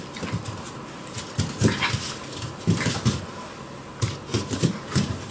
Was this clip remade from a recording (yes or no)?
no